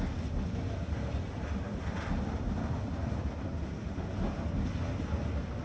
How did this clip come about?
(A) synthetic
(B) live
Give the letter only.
B